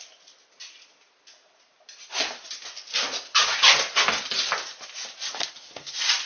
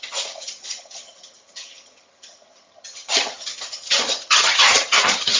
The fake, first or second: second